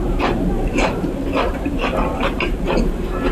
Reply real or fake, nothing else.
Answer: fake